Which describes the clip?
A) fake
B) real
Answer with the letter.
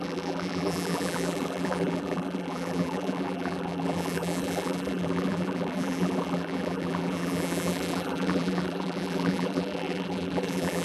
A